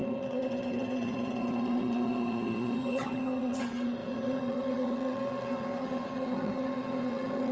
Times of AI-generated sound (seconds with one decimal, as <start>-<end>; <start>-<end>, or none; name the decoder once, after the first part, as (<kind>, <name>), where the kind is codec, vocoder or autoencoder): 0.0-7.5 (vocoder, HiFi-GAN)